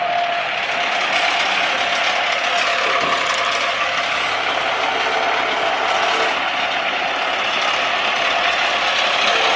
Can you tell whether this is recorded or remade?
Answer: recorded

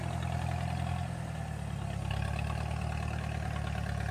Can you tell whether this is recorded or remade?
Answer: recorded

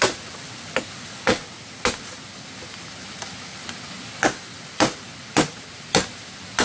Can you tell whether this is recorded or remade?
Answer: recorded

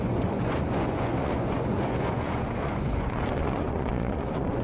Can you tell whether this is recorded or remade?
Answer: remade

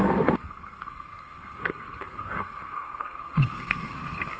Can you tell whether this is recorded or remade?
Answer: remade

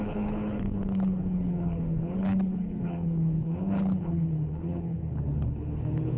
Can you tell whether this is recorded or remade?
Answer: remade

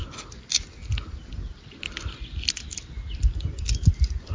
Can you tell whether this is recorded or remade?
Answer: recorded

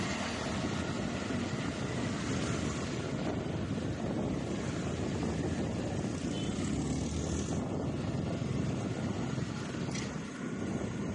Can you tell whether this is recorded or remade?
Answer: recorded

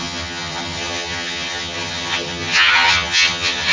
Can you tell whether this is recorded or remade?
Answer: remade